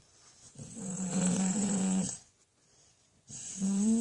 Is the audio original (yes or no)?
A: no